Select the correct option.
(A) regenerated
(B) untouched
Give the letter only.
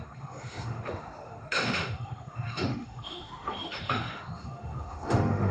A